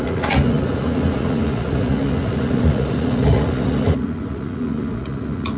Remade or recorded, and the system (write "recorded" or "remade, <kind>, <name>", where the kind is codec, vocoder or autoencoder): remade, vocoder, Vocos